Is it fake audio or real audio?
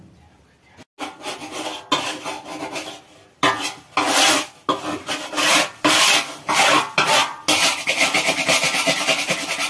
real